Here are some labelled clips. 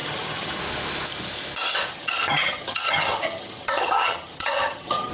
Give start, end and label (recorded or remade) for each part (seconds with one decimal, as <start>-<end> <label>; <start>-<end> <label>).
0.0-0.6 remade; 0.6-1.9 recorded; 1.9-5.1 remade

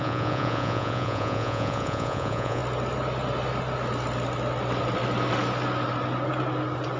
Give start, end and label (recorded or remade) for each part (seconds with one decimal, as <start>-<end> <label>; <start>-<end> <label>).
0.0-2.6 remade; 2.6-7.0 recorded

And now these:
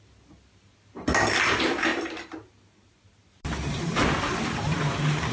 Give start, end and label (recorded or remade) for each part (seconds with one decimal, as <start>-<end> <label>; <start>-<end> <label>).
0.0-5.3 recorded

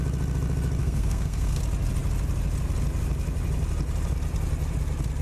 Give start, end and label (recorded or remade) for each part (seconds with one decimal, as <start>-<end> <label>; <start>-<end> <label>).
0.0-0.8 recorded; 0.8-1.6 remade; 1.6-5.2 recorded